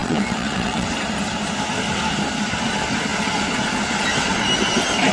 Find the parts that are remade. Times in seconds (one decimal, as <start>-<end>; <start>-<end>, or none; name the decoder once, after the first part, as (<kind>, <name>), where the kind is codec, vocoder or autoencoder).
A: 0.0-0.9 (vocoder, WaveNeXt)